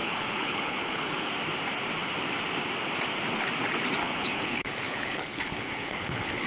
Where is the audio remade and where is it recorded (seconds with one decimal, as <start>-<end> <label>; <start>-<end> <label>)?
0.0-1.3 remade; 1.3-4.0 recorded; 4.0-6.5 remade